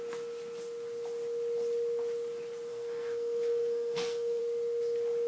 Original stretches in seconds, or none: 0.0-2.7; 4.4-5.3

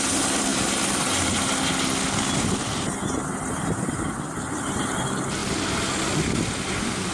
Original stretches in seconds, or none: 0.0-7.1

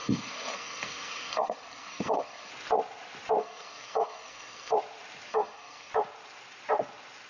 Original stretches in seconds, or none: 2.5-3.4; 4.7-5.3; 5.9-7.3

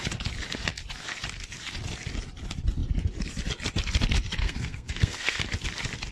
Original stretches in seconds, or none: 0.0-4.4; 5.4-6.1

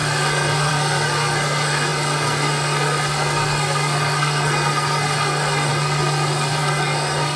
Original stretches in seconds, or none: none

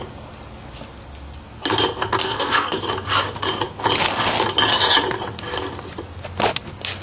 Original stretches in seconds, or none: 0.0-2.2; 2.8-7.0